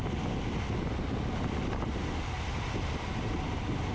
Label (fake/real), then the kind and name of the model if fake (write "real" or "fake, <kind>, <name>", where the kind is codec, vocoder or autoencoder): real